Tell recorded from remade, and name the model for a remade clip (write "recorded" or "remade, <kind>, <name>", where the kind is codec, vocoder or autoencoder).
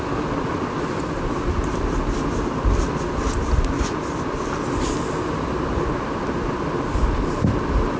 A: recorded